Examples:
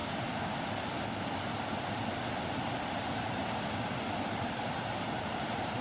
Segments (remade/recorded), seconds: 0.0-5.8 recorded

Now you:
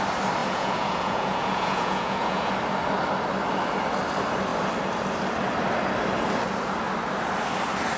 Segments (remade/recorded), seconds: 0.0-0.4 recorded; 0.4-2.5 remade; 2.5-8.0 recorded